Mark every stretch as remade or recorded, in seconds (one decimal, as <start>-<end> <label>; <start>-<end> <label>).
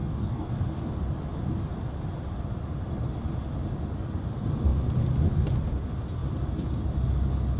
0.0-0.5 remade; 0.5-7.6 recorded